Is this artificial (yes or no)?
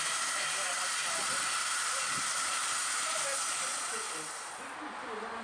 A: no